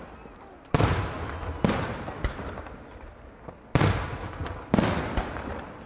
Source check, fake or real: real